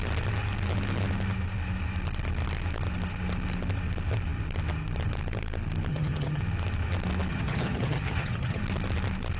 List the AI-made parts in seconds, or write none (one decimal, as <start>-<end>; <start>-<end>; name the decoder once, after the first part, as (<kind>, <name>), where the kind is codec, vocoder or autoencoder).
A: 5.9-6.4 (vocoder, HiFi-GAN); 7.3-8.6